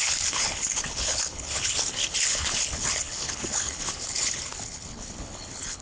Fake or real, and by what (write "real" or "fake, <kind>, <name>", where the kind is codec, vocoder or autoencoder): fake, codec, HILCodec